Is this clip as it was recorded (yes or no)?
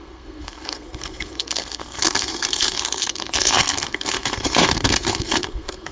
no